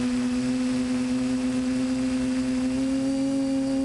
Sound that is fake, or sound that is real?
real